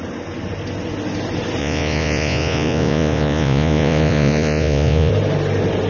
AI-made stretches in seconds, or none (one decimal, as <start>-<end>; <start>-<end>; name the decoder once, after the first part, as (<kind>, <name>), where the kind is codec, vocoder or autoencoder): 1.6-5.1 (vocoder, Vocos)